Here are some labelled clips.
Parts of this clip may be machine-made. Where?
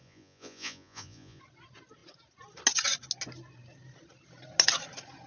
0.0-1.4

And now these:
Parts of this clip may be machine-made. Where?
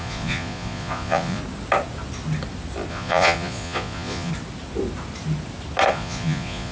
0.0-1.4; 2.9-4.3; 5.9-6.7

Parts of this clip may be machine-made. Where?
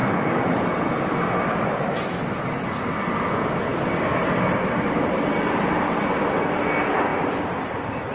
0.0-1.3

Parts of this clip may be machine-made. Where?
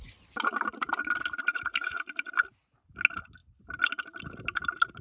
1.5-2.3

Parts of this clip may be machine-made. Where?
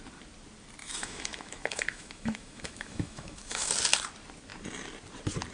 0.8-3.7